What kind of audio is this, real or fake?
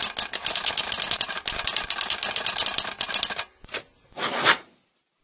real